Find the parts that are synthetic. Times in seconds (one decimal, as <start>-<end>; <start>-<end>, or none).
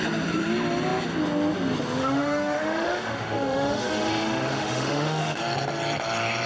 2.0-5.4